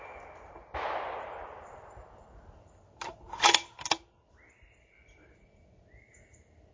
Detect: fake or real real